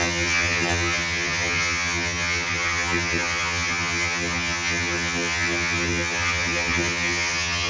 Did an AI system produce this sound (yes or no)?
yes